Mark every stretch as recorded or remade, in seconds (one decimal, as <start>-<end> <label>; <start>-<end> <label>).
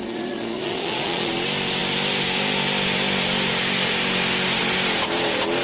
0.0-1.3 remade; 1.3-5.6 recorded